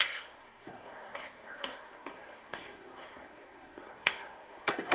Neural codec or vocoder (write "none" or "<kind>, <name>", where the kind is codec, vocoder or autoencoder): codec, SNAC